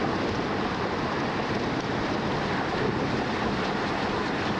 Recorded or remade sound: recorded